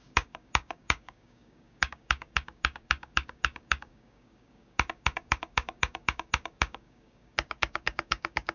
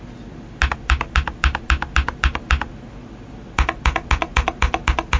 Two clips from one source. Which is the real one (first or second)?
second